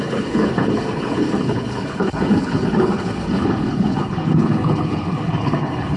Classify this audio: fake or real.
fake